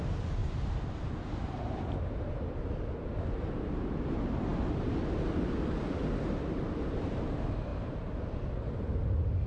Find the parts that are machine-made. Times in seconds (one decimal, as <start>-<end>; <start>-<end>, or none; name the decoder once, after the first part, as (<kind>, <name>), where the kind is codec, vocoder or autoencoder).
0.4-2.7 (vocoder, BigVGAN v2); 7.7-8.4